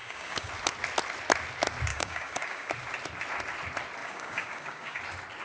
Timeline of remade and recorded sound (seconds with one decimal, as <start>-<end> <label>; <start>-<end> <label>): 0.0-0.5 remade; 0.5-1.9 recorded; 1.9-2.7 remade; 2.7-4.0 recorded; 4.0-5.0 remade; 5.0-5.4 recorded